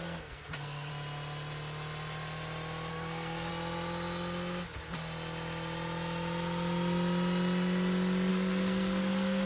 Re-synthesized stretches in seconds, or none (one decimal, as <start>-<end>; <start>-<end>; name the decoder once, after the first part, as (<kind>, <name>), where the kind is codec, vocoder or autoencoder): 0.0-0.9 (codec, SNAC); 2.9-3.5; 8.3-9.5